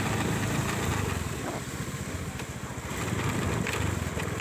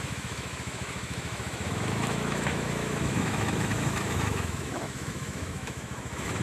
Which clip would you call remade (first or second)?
second